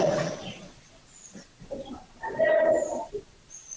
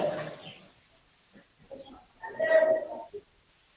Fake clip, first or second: first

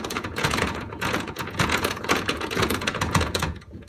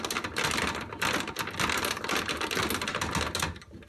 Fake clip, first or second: first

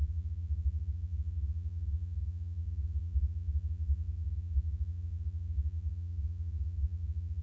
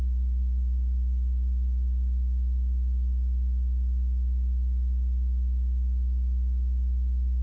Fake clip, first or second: first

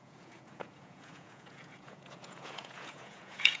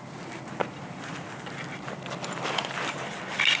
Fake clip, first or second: first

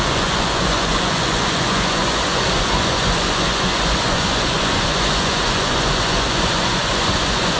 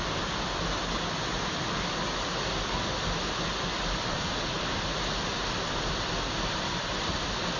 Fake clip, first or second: first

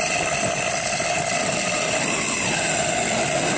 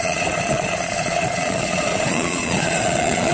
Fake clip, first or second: second